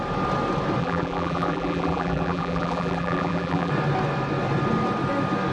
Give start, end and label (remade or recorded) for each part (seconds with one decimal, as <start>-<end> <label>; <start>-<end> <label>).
0.0-0.8 recorded; 0.8-3.7 remade; 3.7-5.5 recorded